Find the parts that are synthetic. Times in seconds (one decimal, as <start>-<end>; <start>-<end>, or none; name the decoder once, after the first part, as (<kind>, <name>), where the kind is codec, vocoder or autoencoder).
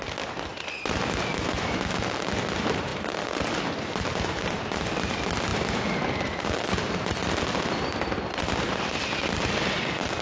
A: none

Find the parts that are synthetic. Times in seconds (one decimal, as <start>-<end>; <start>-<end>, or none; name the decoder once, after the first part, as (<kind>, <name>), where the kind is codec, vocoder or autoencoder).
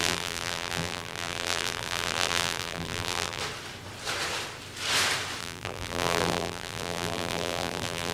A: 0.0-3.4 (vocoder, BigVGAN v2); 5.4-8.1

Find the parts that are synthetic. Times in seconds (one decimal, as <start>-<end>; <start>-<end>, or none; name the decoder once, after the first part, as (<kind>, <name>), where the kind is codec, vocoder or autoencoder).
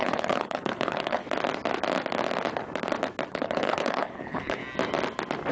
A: 0.0-1.2 (codec, HILCodec); 3.3-4.6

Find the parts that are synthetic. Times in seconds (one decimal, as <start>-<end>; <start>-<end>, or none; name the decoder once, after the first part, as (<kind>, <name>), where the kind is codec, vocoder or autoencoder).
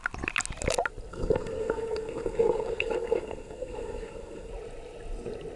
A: 1.1-4.5 (codec, SNAC)